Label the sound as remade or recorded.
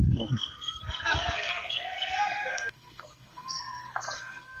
remade